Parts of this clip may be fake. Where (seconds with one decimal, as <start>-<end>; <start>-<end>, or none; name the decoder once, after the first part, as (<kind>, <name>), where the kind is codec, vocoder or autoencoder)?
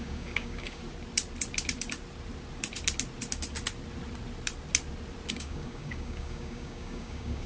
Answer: 0.0-0.8 (codec, DAC); 5.3-7.5